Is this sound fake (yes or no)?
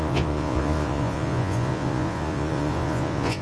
yes